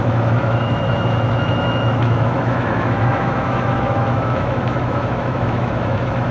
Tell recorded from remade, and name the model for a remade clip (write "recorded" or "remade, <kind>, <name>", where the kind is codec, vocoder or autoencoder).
remade, autoencoder, DAC-VAE